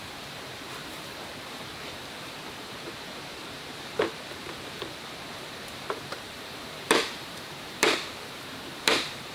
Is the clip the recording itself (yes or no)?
no